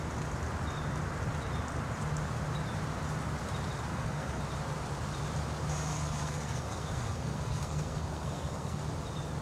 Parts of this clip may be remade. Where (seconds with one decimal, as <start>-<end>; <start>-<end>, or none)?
3.9-4.4; 5.9-8.8